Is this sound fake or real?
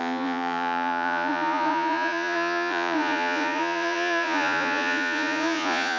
fake